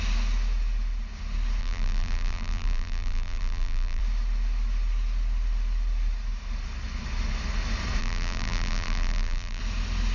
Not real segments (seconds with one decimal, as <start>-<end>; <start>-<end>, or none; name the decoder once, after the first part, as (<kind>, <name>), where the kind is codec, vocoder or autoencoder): 1.6-4.0 (vocoder, BigVGAN v2); 8.0-9.6